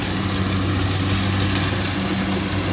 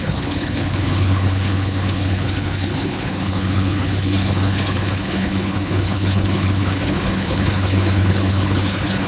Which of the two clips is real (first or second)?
first